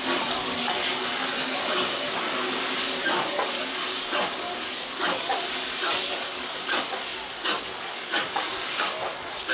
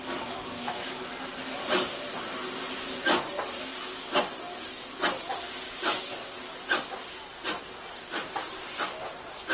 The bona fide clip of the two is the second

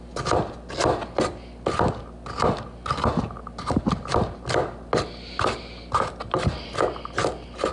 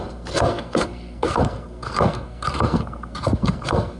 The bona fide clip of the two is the first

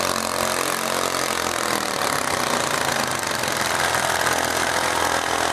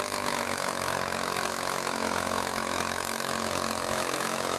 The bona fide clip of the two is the first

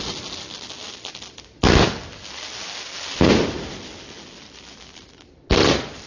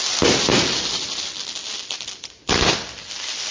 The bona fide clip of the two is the first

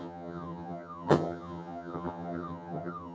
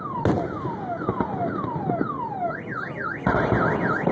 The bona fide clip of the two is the second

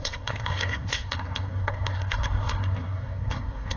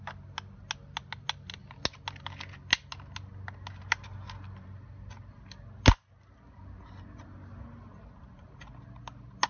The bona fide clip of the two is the second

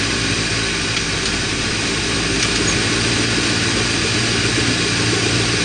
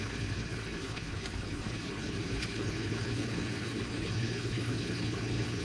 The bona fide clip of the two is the first